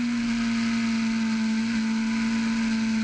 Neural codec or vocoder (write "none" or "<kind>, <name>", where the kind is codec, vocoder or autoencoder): none